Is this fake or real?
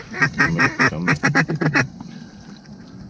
fake